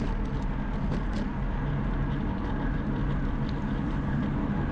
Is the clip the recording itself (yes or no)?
yes